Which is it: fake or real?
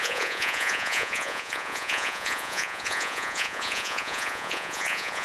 fake